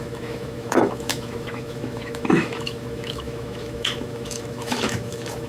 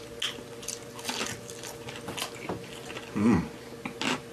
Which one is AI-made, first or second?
first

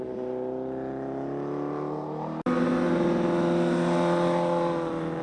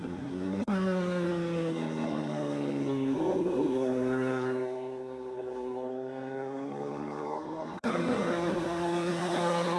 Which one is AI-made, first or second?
second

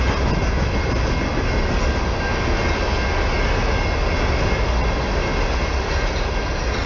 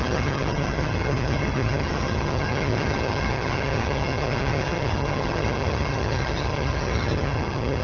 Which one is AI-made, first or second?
second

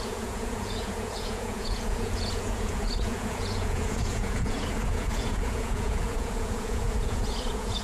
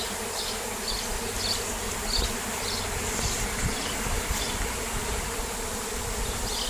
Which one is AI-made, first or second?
first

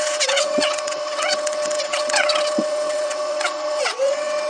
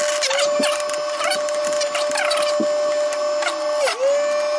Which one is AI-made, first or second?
first